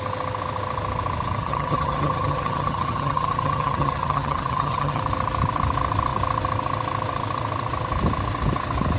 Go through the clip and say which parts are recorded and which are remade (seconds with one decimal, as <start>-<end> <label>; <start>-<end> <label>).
0.0-1.4 recorded; 1.4-5.0 remade; 5.0-9.0 recorded